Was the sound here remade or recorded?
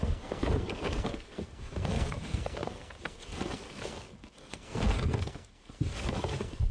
remade